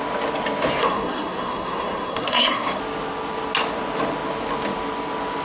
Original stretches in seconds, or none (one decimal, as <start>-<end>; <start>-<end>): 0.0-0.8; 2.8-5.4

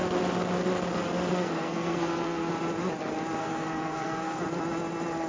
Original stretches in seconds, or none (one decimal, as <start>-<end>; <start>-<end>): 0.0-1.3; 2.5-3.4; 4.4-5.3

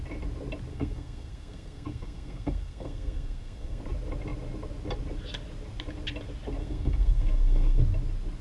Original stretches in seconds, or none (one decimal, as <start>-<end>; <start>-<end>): 0.0-0.7; 3.8-6.6; 7.8-8.4

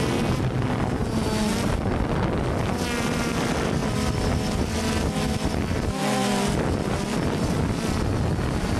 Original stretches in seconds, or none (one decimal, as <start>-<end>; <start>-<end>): 0.0-8.8

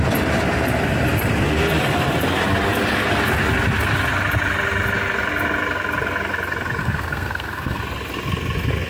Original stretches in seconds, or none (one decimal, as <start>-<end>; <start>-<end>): 0.0-6.8; 7.8-8.9

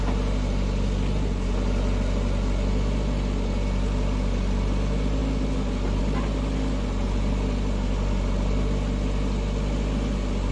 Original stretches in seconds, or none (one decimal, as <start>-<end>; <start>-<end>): 0.0-10.5